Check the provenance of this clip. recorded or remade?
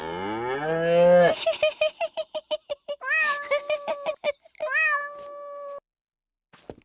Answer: recorded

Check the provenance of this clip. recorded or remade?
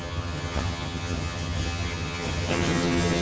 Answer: remade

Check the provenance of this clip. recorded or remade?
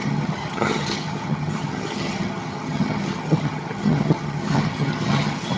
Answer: remade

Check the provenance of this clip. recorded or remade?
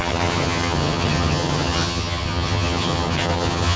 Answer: remade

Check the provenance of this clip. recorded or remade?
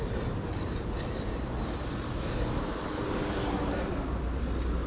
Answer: recorded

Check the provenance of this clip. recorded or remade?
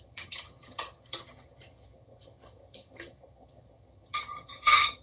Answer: remade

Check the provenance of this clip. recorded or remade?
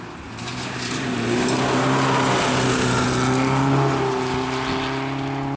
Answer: recorded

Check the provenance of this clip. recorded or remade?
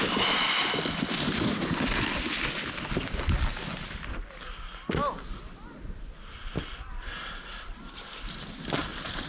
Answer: recorded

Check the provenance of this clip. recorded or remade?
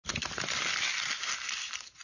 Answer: recorded